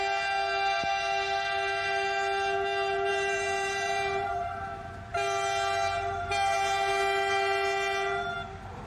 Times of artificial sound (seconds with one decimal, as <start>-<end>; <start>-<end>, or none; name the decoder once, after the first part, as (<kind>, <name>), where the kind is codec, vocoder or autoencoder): 3.1-5.0 (vocoder, BigVGAN v2)

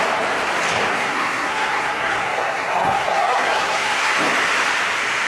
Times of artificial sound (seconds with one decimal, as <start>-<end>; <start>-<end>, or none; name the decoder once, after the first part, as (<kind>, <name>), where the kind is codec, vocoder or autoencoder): 0.9-4.1 (codec, SNAC)

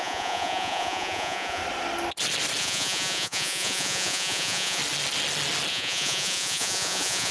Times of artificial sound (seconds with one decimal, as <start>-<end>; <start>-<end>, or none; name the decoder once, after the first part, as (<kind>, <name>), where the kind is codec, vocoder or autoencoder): 0.0-1.6 (vocoder, Vocos); 2.6-4.8; 5.7-7.3

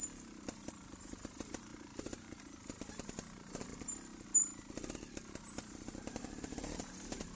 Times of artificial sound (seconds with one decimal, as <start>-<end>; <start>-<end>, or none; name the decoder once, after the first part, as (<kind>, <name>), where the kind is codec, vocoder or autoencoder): 0.0-3.7 (vocoder, BigVGAN v2); 5.3-7.4

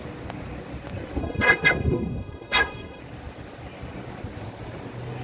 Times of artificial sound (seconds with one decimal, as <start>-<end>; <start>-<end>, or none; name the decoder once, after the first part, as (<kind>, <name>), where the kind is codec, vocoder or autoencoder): 1.2-3.0 (codec, SNAC)